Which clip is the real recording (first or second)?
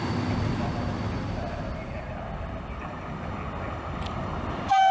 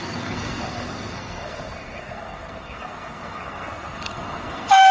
first